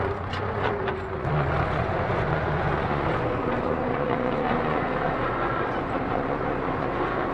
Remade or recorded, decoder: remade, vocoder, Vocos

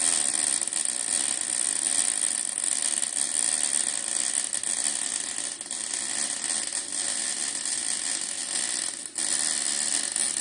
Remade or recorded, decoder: recorded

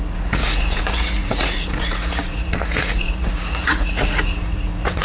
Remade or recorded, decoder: remade, vocoder, Vocos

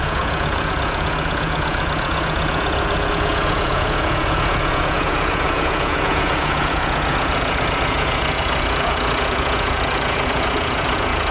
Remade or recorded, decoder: remade, vocoder, Vocos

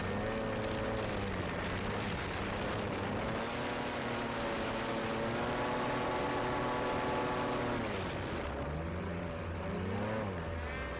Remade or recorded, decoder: recorded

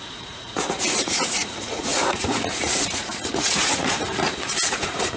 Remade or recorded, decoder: remade, vocoder, Vocos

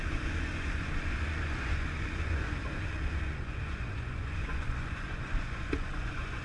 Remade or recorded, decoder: remade, vocoder, Vocos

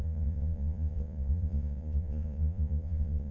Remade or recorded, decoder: remade, vocoder, Vocos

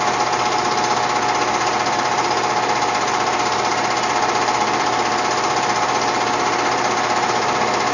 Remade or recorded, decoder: recorded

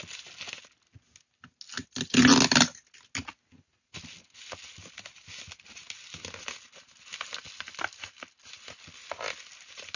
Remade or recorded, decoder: recorded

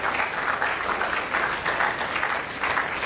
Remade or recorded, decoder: recorded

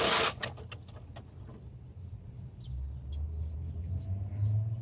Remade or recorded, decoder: recorded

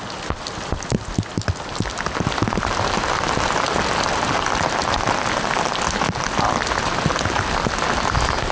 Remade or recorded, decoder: recorded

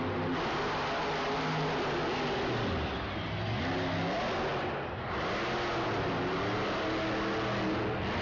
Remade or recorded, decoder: recorded